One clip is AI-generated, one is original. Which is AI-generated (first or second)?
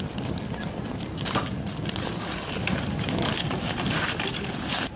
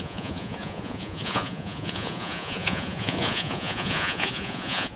second